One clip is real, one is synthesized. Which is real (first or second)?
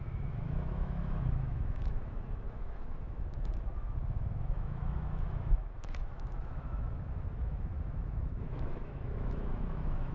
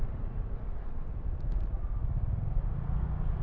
second